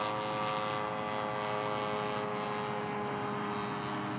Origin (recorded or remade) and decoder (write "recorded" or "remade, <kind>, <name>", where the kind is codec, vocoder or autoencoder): recorded